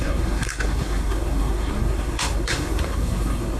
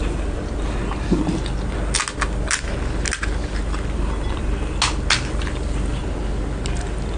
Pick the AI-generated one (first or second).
first